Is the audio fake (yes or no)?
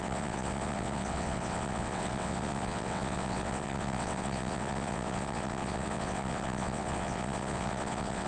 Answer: yes